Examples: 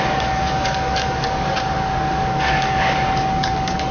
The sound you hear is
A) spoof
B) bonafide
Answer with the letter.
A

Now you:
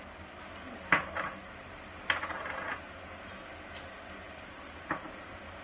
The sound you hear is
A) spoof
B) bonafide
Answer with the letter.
B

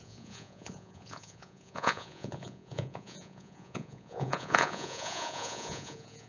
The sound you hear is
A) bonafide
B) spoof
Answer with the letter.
B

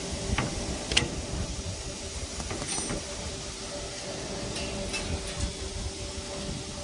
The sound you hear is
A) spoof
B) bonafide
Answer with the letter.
B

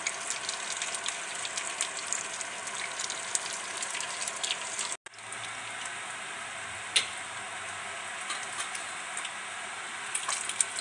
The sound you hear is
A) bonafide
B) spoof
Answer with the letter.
A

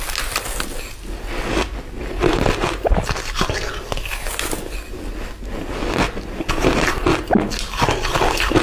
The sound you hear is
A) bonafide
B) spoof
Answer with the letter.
A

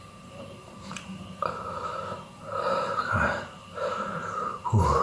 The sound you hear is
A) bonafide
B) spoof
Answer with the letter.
B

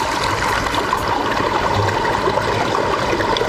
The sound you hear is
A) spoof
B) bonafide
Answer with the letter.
B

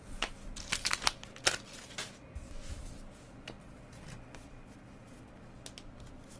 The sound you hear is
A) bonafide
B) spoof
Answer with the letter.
A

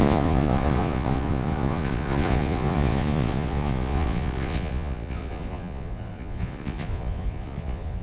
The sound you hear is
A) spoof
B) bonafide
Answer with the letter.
A